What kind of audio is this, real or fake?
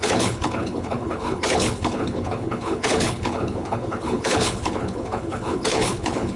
fake